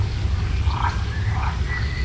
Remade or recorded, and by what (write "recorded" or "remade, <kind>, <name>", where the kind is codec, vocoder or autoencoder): remade, codec, DAC